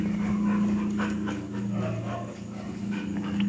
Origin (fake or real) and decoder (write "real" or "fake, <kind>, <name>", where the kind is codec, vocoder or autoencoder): fake, codec, DAC